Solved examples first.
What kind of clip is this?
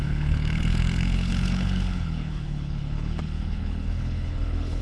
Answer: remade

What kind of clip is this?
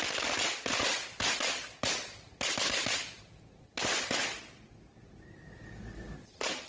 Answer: recorded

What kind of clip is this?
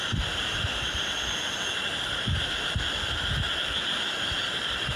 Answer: recorded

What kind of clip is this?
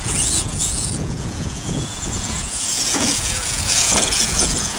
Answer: remade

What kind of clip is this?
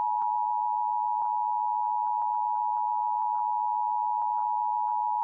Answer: recorded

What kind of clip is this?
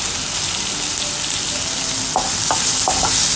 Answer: recorded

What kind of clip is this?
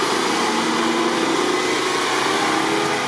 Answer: recorded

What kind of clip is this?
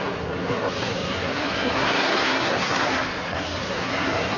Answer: remade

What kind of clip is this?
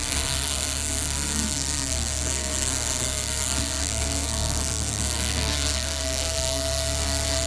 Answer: remade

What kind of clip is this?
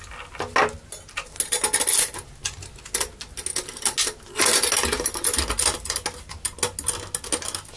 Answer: recorded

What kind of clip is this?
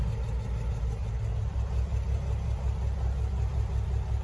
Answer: recorded